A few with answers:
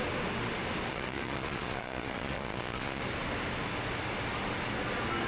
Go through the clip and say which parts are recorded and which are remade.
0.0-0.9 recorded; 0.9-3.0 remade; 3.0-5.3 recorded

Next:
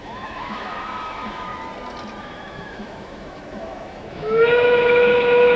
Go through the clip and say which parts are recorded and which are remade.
0.0-1.5 remade; 1.5-2.2 recorded; 2.2-5.6 remade

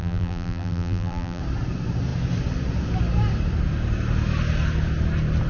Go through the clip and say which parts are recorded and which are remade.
0.0-1.4 remade; 1.4-5.5 recorded

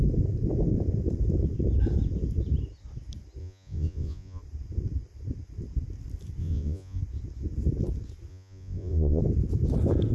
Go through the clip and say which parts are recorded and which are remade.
0.0-3.4 recorded; 3.4-4.4 remade; 4.4-6.4 recorded; 6.4-7.0 remade; 7.0-8.3 recorded; 8.3-9.2 remade; 9.2-10.1 recorded

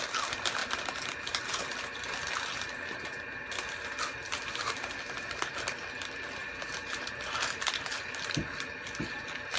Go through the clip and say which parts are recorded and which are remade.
0.0-9.6 recorded

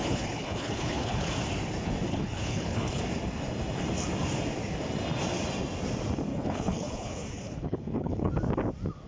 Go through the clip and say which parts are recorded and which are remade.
0.0-1.3 remade; 1.3-2.1 recorded; 2.1-3.0 remade; 3.0-6.3 recorded; 6.3-8.3 remade; 8.3-9.1 recorded